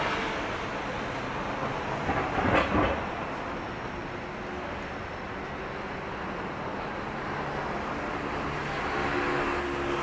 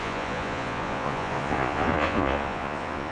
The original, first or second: first